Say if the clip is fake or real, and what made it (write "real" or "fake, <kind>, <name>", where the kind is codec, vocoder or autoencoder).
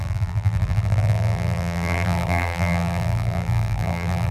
fake, vocoder, BigVGAN v2